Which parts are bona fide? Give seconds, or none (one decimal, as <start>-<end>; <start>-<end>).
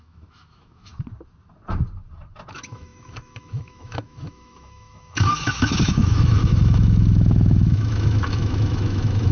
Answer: 0.9-2.5